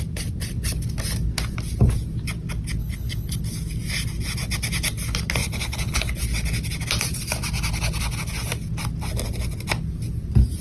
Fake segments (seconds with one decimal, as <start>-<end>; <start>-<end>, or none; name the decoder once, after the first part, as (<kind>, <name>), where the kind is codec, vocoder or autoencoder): 2.8-3.4 (codec, HILCodec); 5.4-6.1